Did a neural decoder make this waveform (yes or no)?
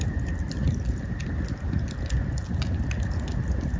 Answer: no